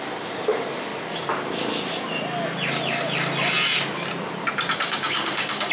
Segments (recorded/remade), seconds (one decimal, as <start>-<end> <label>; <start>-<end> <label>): 0.0-4.8 recorded; 4.8-5.7 remade